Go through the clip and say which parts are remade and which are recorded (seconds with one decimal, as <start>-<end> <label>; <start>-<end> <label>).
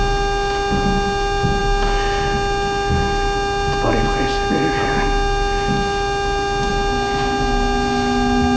0.0-8.6 recorded